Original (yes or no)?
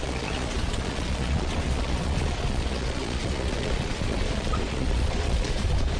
no